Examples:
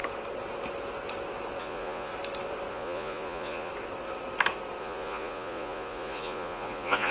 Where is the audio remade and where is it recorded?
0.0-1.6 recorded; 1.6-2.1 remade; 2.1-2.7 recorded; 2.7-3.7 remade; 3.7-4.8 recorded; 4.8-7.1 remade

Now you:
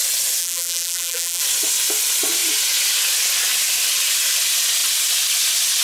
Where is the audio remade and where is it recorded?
0.0-0.4 recorded; 0.4-1.4 remade; 1.4-5.8 recorded